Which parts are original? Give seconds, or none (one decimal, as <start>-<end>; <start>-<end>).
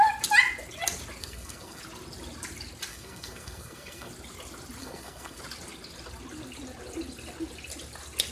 0.0-1.2; 1.8-2.9; 4.1-4.8; 5.4-8.3